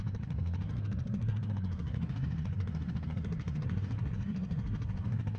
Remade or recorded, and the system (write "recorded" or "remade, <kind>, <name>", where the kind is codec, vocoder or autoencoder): remade, codec, SNAC